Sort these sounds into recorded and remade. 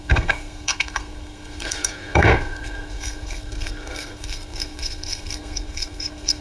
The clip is remade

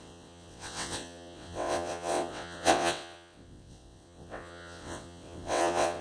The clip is remade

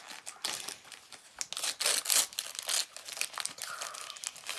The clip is recorded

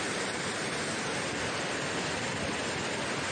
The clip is recorded